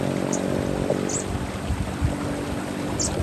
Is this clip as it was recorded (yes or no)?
no